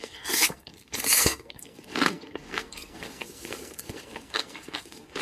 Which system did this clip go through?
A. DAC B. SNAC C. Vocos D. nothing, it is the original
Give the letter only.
B